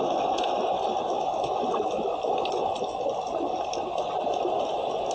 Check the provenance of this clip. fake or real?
real